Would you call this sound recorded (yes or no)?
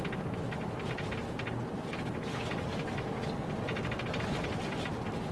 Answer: yes